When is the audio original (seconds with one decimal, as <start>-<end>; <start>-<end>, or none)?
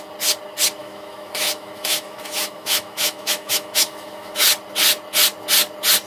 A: 0.0-0.8; 4.5-6.1